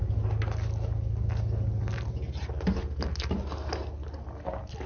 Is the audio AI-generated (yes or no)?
no